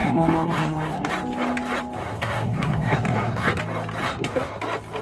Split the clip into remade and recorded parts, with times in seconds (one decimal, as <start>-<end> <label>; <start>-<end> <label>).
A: 0.0-1.1 remade; 1.1-2.0 recorded; 2.0-3.6 remade; 3.6-4.0 recorded; 4.0-4.6 remade; 4.6-5.0 recorded